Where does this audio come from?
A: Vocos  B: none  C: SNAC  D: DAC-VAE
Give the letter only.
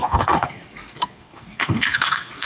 C